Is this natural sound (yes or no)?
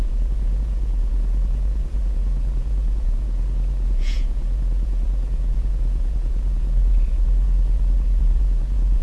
no